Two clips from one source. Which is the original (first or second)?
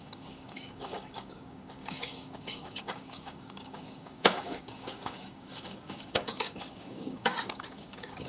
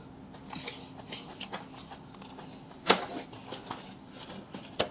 second